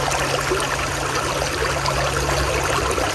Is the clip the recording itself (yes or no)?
yes